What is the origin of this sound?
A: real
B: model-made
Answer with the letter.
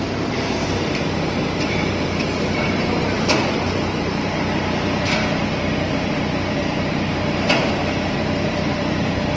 B